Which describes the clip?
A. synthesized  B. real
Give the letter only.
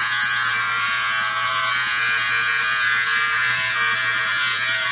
A